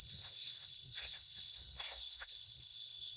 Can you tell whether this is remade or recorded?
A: remade